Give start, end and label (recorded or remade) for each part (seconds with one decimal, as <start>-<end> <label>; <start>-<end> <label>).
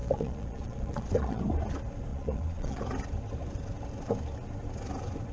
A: 0.0-1.4 remade; 1.4-2.1 recorded; 2.1-2.8 remade; 2.8-5.3 recorded